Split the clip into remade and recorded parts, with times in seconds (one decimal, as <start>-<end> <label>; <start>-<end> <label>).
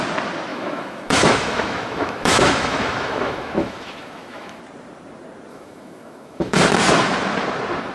0.0-0.5 recorded; 0.5-4.6 remade; 4.6-5.5 recorded; 5.5-6.6 remade; 6.6-7.9 recorded